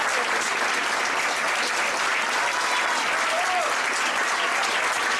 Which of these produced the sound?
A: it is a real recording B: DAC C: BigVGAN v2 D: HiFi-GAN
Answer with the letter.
A